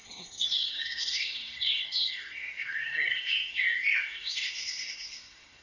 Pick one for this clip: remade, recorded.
remade